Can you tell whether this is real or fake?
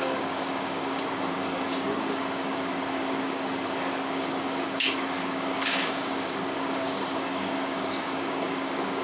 fake